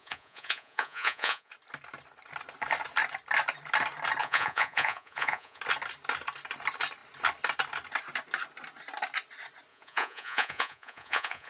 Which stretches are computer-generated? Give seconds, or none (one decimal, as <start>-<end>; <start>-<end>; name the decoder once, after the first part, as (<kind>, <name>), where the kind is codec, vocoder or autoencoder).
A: 0.0-1.5 (vocoder, Vocos); 4.2-5.6; 9.7-11.5